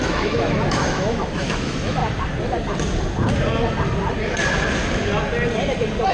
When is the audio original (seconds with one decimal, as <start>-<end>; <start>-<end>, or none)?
2.0-6.1